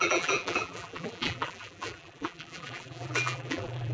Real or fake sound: fake